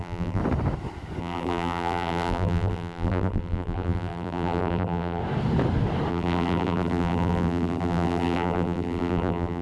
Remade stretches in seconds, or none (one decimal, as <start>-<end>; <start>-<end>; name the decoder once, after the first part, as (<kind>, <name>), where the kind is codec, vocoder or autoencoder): 0.0-0.4 (vocoder, BigVGAN v2); 1.2-5.2; 6.1-9.6